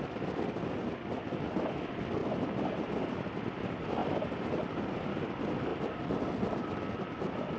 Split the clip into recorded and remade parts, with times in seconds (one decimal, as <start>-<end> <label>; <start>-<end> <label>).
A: 0.0-2.2 recorded; 2.2-3.3 remade; 3.3-4.0 recorded; 4.0-4.7 remade; 4.7-7.6 recorded